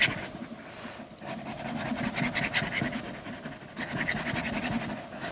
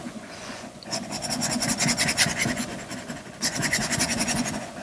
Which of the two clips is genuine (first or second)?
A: first